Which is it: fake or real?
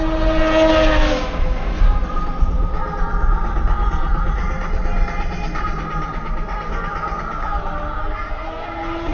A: real